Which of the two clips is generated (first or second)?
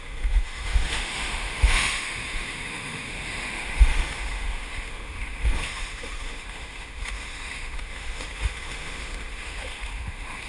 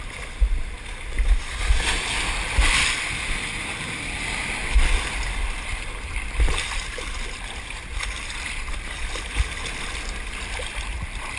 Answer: first